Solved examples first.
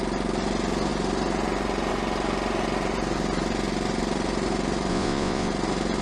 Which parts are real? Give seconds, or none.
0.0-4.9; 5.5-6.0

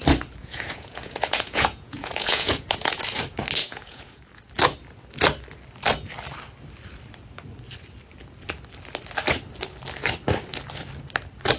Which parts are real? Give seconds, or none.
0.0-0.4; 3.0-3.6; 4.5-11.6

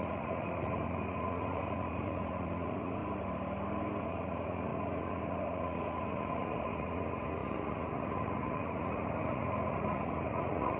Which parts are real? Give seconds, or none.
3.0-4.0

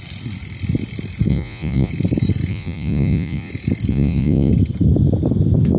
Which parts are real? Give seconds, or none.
0.0-1.3; 1.9-2.5; 3.5-3.9; 4.5-5.8